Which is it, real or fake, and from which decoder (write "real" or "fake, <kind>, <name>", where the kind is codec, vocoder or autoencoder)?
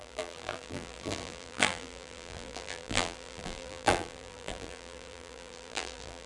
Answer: fake, vocoder, BigVGAN v2